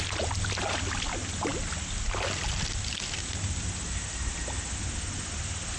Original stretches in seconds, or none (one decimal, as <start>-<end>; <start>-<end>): 0.0-5.8

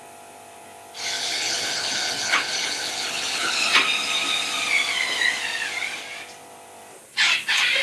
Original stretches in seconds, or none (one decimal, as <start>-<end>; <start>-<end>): 0.0-1.2; 3.7-7.8

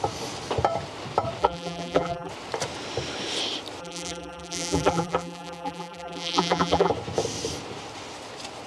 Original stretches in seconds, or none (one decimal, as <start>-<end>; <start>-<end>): 0.0-1.4; 2.3-3.8; 6.9-8.7

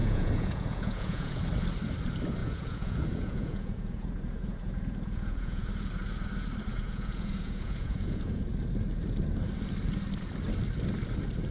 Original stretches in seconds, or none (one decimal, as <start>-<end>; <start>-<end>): 1.4-2.4; 5.7-6.7; 8.5-11.5

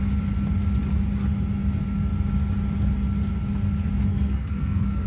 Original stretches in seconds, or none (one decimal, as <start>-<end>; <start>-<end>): 0.0-4.1

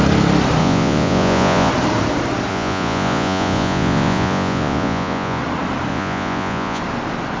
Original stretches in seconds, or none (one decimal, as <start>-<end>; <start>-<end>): 0.0-0.6; 1.7-2.5; 5.4-5.9; 6.8-7.4